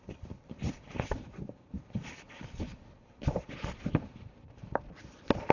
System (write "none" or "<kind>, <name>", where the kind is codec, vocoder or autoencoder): vocoder, BigVGAN v2